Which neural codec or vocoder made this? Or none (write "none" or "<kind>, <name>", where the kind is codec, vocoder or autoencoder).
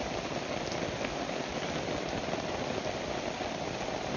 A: none